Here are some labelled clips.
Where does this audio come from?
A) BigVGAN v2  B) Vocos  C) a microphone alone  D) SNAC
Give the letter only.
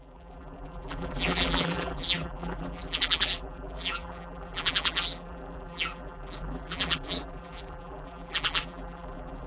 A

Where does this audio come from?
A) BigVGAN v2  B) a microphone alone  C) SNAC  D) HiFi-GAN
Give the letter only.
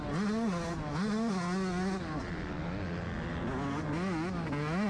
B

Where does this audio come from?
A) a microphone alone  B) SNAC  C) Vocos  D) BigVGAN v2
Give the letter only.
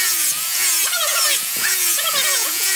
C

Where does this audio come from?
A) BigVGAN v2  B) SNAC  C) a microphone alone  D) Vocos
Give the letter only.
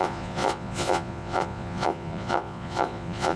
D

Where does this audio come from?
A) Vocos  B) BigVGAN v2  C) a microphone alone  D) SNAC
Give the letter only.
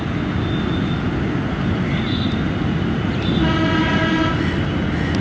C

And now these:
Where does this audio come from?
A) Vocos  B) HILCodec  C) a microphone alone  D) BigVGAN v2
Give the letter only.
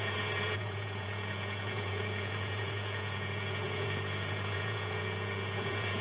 A